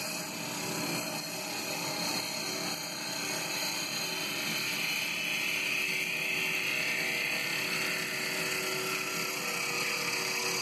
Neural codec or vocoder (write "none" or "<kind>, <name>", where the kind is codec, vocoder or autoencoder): none